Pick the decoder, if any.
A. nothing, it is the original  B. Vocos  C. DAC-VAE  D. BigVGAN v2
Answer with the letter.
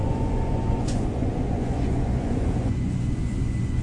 B